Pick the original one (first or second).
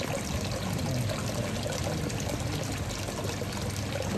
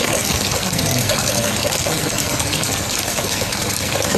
first